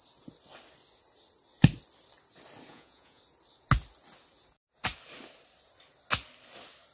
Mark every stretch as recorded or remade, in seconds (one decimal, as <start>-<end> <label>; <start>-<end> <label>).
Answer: 0.0-2.7 recorded; 2.7-3.2 remade; 3.2-6.9 recorded